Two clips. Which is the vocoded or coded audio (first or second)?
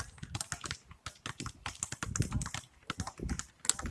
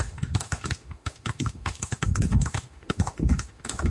second